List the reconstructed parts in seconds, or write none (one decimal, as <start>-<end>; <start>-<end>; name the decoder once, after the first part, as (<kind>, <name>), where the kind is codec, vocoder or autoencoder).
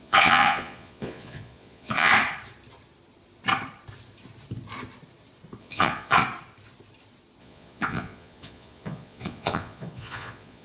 0.0-2.1 (vocoder, Vocos); 5.6-6.2; 7.4-10.6